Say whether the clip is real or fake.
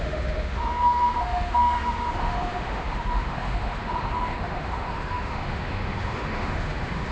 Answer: fake